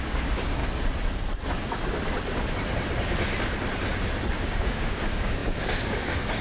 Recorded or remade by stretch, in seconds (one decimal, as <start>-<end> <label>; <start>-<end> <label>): 0.0-0.6 remade; 0.6-4.4 recorded; 4.4-6.4 remade